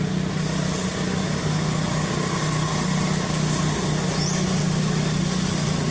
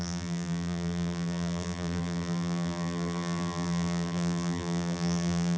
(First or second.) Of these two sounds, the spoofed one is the second